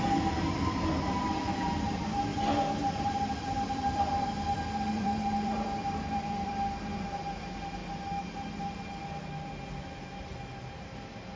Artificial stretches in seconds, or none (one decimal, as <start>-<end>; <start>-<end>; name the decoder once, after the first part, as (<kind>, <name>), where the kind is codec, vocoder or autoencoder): 2.3-6.5 (vocoder, BigVGAN v2)